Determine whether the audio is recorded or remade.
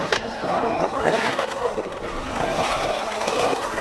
remade